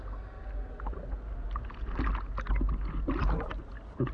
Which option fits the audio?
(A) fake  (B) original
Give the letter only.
B